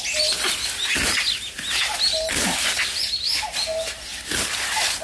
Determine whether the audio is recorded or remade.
recorded